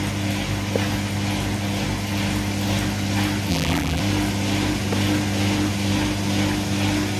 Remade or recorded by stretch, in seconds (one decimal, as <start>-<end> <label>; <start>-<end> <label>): 0.0-3.5 recorded; 3.5-4.0 remade; 4.0-7.2 recorded